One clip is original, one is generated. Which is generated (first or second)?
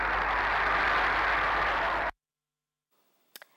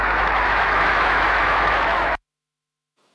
second